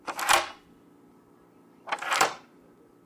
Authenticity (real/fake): real